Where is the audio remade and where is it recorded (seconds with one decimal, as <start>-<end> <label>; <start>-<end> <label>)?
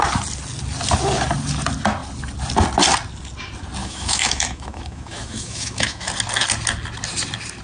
0.0-3.8 recorded; 3.8-6.1 remade; 6.1-7.6 recorded